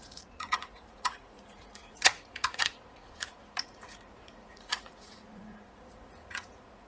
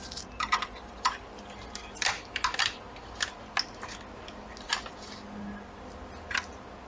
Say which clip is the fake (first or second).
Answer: first